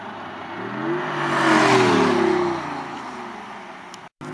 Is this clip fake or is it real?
real